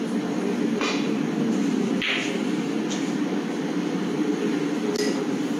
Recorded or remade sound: recorded